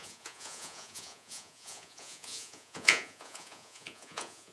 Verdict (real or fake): fake